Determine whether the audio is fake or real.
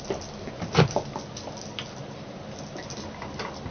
real